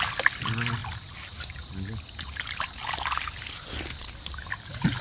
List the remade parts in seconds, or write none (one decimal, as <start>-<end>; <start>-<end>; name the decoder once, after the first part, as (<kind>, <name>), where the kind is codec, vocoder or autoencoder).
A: 0.0-0.8 (vocoder, BigVGAN v2); 3.8-5.0